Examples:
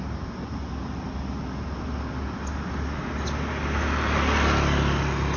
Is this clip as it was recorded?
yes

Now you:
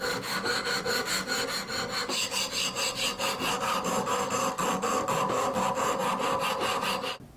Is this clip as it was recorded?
yes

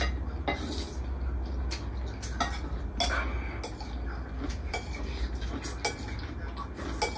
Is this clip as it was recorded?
yes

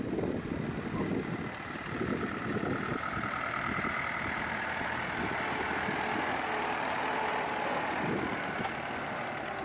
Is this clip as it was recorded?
yes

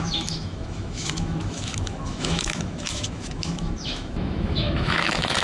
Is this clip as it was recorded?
no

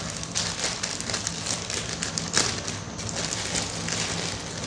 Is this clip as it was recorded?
yes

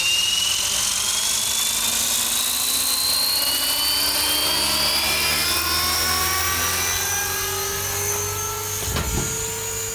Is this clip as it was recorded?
yes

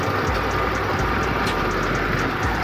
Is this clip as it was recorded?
yes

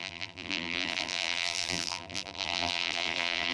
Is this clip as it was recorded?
no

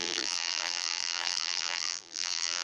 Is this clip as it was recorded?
no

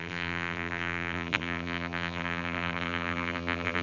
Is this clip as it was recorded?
no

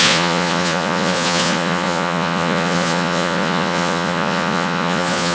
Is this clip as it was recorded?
no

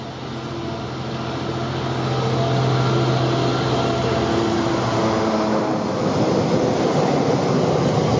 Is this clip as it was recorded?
yes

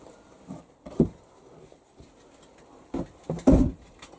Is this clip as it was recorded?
yes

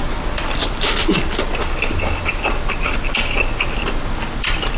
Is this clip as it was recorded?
yes